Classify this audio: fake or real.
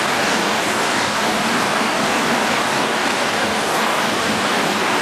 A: fake